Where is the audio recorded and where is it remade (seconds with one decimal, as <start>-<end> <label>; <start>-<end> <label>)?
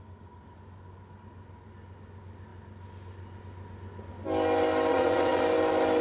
0.0-4.9 recorded; 4.9-5.4 remade; 5.4-6.0 recorded